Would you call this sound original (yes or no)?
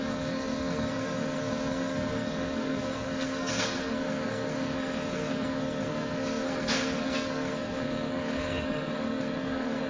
no